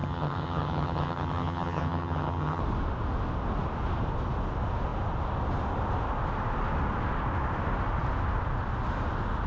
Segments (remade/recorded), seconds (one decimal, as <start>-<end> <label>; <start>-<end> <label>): 0.0-2.6 remade; 2.6-9.5 recorded